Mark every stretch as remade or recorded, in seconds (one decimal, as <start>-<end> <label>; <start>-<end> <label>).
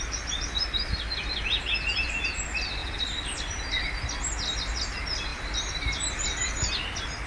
0.0-2.8 recorded; 2.8-4.8 remade; 4.8-5.3 recorded; 5.3-6.7 remade; 6.7-7.3 recorded